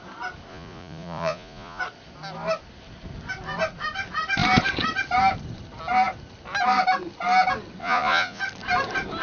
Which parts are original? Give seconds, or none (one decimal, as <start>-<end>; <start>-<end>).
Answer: 0.0-0.5; 1.8-7.8; 8.4-9.2